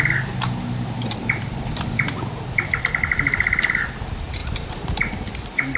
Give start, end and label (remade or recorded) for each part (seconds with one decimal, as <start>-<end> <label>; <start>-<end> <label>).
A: 0.0-4.4 recorded; 4.4-5.8 remade

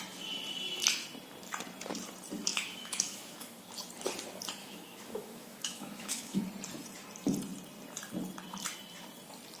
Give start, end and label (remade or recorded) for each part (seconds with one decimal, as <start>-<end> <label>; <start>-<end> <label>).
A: 0.0-2.5 recorded; 2.5-3.7 remade; 3.7-4.6 recorded; 4.6-6.4 remade; 6.4-9.6 recorded

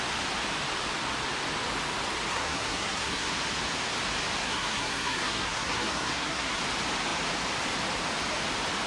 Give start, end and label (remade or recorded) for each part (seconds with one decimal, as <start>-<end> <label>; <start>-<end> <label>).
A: 0.0-2.3 recorded; 2.3-3.3 remade; 3.3-4.4 recorded; 4.4-6.6 remade; 6.6-8.9 recorded

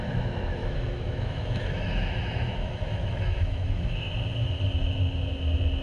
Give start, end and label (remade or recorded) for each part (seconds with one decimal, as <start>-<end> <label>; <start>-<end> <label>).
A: 0.0-0.6 recorded; 0.6-4.1 remade; 4.1-5.8 recorded

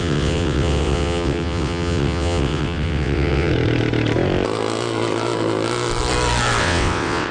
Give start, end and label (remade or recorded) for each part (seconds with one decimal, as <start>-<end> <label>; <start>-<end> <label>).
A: 0.0-3.5 remade; 3.5-6.6 recorded; 6.6-7.3 remade

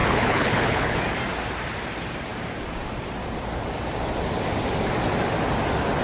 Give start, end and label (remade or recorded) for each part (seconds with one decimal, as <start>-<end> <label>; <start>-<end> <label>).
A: 0.0-1.0 remade; 1.0-6.0 recorded

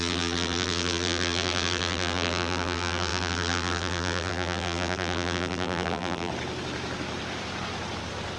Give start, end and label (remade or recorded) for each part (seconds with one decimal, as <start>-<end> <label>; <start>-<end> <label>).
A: 0.0-6.3 remade; 6.3-8.4 recorded